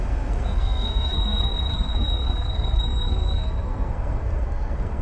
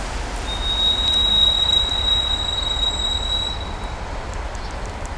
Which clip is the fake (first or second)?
first